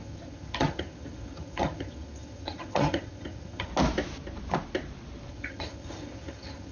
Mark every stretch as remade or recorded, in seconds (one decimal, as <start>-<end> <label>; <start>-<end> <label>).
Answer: 0.0-3.7 remade; 3.7-5.3 recorded; 5.3-6.7 remade